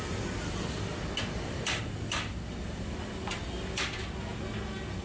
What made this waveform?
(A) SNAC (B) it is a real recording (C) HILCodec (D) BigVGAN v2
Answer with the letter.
B